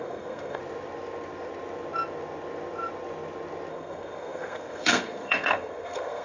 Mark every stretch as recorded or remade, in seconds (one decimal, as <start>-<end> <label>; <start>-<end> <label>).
0.0-0.6 remade; 0.6-3.7 recorded; 3.7-6.2 remade